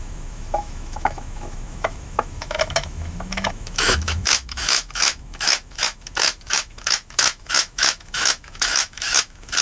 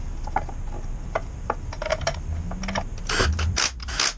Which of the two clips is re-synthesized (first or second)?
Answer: first